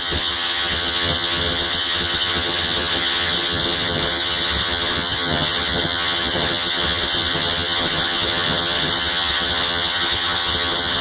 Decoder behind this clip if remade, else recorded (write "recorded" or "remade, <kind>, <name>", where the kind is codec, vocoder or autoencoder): remade, vocoder, HiFi-GAN